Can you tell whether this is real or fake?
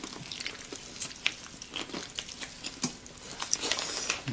real